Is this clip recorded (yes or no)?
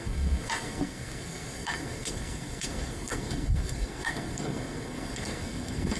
no